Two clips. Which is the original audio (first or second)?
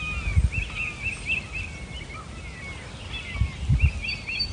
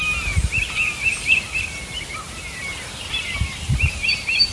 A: first